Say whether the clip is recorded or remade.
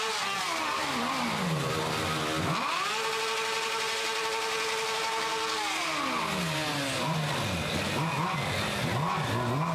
recorded